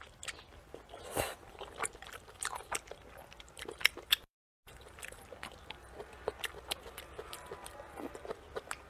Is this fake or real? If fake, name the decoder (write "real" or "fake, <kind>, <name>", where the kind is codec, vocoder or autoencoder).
real